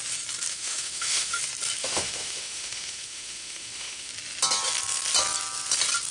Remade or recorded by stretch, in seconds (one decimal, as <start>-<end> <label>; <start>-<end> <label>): 0.0-0.5 recorded; 0.5-1.4 remade; 1.4-1.8 recorded; 1.8-4.1 remade; 4.1-6.1 recorded